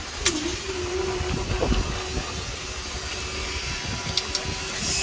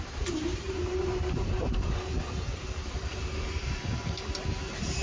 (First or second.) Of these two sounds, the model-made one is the second